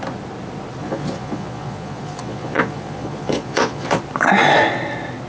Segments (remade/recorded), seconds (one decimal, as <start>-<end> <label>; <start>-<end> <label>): 0.0-0.8 recorded; 0.8-4.0 remade; 4.0-5.3 recorded